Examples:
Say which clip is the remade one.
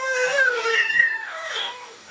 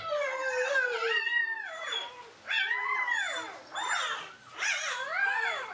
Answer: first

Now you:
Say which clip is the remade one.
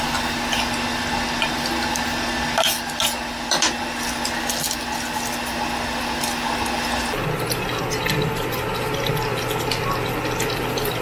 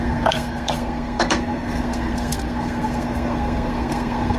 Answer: second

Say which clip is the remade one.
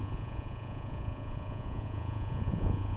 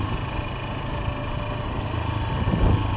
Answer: first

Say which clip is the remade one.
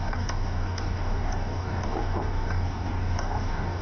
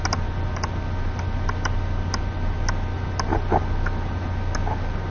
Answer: first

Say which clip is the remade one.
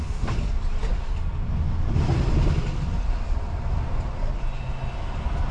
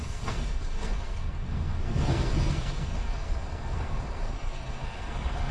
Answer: second